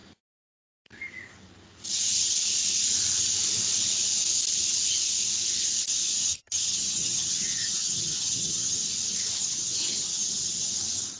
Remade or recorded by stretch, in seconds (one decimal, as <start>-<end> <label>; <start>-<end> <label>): 0.0-6.1 recorded; 6.1-8.9 remade; 8.9-9.4 recorded; 9.4-10.7 remade; 10.7-11.2 recorded